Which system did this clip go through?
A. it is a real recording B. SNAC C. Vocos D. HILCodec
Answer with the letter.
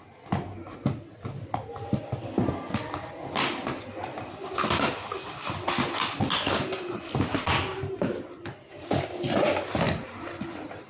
A